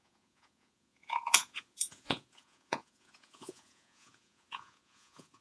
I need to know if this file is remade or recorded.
remade